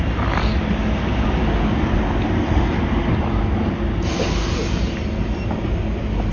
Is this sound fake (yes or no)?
no